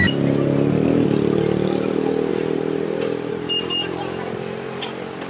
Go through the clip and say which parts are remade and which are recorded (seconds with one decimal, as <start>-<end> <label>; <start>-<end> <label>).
0.0-5.3 recorded